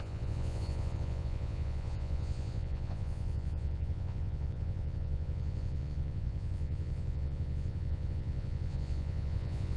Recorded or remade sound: remade